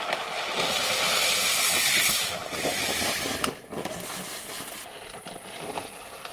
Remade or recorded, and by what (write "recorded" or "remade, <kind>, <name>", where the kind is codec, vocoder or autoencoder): recorded